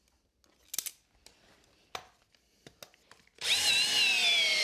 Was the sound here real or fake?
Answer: real